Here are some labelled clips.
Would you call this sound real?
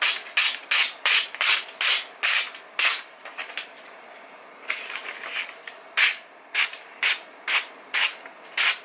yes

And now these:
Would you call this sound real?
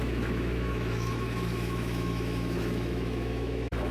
no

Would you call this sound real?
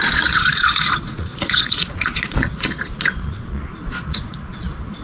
no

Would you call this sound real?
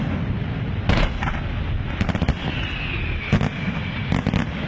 yes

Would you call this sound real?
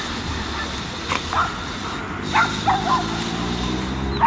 yes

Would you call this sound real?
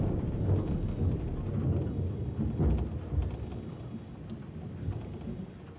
yes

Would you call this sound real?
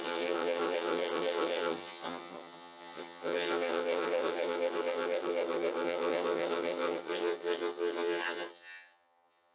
no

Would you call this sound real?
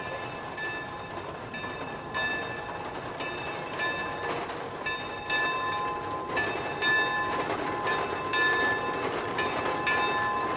yes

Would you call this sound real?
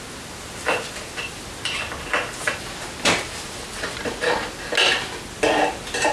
yes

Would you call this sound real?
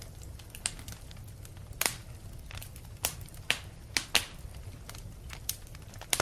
yes